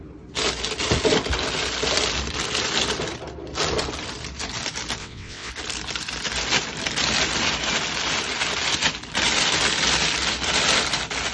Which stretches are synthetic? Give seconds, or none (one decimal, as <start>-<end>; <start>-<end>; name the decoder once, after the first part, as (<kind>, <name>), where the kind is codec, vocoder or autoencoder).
5.0-5.5 (vocoder, WaveNeXt)